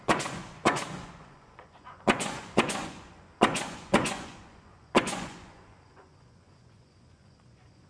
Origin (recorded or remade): remade